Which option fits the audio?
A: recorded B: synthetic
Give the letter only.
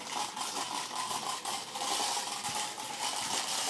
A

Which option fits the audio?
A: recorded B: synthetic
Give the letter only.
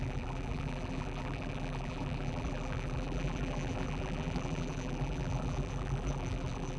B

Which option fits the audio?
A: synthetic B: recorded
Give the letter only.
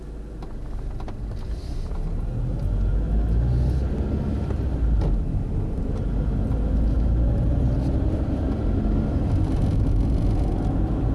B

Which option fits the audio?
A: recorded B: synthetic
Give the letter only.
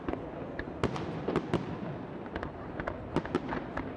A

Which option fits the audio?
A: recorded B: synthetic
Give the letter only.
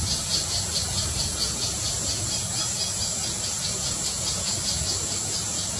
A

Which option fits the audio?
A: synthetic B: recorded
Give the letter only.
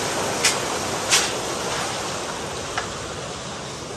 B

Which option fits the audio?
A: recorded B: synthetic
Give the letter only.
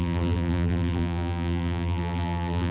B